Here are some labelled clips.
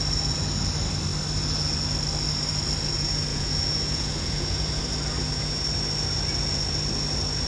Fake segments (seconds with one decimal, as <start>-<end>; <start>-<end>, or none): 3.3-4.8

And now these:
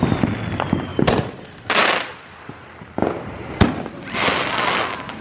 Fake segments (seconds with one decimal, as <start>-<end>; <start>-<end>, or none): 0.9-2.4; 3.0-3.6

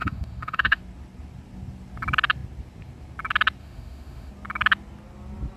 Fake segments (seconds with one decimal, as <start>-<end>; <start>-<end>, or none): 0.0-0.8; 3.6-4.3

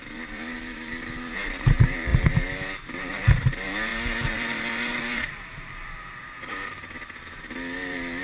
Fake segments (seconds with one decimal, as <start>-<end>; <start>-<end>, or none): 0.0-8.2

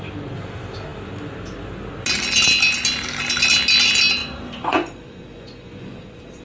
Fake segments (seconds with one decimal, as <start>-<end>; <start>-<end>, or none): 4.2-6.4

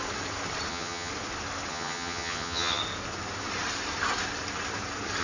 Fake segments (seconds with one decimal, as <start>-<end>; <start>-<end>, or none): 0.7-1.1; 1.7-2.8